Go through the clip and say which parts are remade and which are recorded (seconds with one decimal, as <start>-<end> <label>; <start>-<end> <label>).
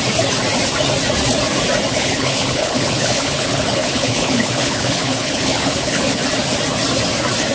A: 0.0-1.9 recorded; 1.9-6.2 remade; 6.2-7.5 recorded